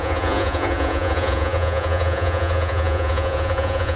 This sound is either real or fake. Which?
fake